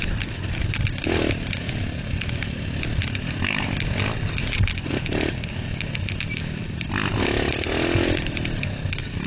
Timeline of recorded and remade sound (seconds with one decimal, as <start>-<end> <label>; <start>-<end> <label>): 0.0-9.3 recorded